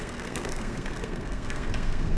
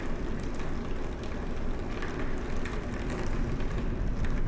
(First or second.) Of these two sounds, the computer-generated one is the first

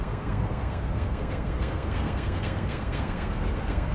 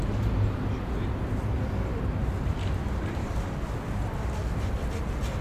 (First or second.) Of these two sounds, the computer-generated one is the first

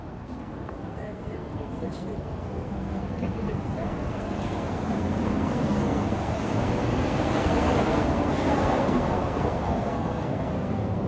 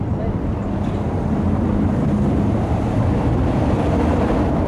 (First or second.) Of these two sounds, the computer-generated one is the first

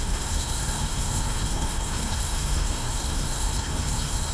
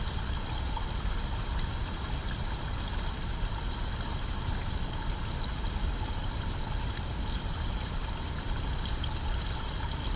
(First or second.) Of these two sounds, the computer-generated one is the first